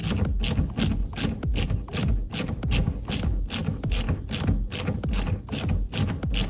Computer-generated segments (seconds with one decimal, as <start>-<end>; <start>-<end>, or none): none